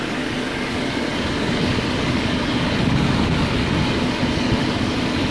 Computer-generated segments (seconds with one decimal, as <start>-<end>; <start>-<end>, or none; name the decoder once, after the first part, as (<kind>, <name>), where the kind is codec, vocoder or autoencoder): 0.0-5.3 (codec, DAC)